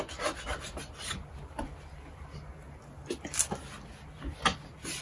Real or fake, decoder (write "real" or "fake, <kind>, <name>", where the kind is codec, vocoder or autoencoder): real